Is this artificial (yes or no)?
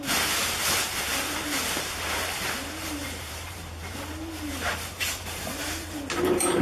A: yes